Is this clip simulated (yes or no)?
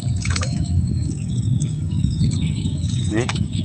yes